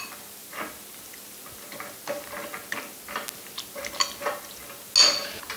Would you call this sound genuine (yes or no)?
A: yes